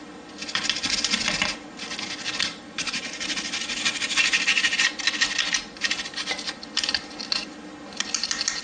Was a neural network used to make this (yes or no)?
no